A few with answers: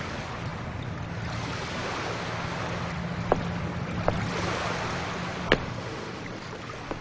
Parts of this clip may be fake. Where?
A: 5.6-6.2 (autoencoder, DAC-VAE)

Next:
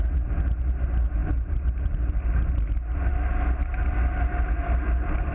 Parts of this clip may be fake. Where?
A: none